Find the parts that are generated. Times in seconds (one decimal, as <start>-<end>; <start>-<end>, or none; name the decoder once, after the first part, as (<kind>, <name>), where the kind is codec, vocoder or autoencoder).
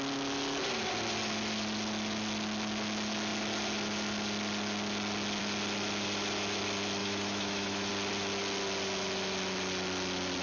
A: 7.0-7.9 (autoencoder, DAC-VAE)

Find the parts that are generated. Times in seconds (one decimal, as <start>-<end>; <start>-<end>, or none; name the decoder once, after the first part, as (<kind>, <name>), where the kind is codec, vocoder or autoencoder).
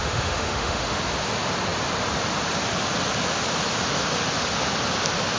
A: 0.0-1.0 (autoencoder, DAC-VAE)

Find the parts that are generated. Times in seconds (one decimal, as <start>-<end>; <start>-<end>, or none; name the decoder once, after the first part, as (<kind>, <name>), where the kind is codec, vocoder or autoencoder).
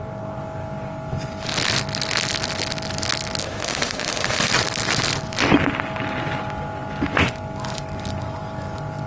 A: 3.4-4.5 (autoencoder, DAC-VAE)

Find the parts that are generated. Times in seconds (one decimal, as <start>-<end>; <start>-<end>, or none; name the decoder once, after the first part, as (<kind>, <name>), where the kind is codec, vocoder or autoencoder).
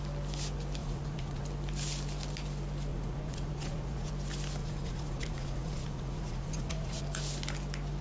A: 0.8-1.4 (vocoder, Vocos); 2.9-4.1; 4.6-7.0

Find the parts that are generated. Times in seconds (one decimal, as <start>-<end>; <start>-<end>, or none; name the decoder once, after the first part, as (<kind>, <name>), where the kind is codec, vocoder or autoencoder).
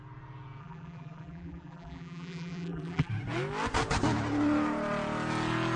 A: 0.6-3.1 (vocoder, BigVGAN v2)